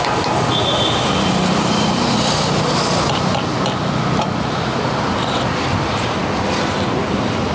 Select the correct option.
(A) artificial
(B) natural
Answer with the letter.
B